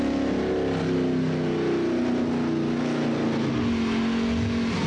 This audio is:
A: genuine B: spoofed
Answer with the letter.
A